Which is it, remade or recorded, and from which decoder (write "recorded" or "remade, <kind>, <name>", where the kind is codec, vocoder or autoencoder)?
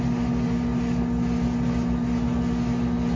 recorded